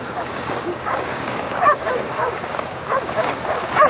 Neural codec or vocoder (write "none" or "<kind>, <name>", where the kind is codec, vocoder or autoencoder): codec, DAC